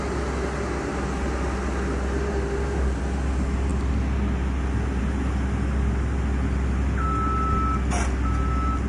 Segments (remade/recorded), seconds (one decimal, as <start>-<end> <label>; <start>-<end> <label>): 0.0-8.9 recorded